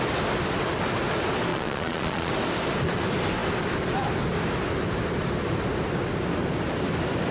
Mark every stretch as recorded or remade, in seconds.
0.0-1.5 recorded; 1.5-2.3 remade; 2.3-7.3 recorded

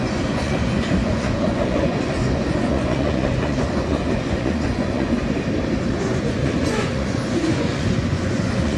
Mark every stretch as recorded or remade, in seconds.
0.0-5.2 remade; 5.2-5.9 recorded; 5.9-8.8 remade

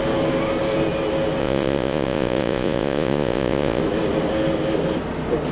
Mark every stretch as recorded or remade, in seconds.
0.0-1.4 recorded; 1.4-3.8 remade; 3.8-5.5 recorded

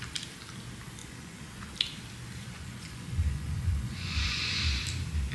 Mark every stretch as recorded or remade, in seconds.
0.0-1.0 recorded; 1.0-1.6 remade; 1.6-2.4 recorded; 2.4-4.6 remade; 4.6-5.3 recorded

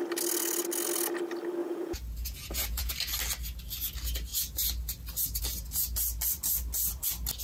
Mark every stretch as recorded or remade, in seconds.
0.0-1.6 recorded; 1.6-2.9 remade; 2.9-7.4 recorded

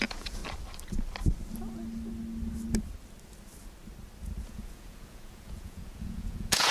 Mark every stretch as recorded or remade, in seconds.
0.0-0.4 remade; 0.4-4.4 recorded; 4.4-6.7 remade